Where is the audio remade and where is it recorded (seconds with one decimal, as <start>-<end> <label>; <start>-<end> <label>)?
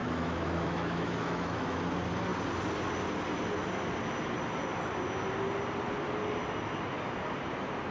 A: 0.0-1.8 remade; 1.8-7.9 recorded